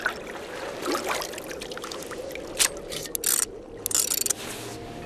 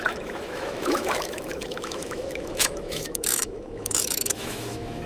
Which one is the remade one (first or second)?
second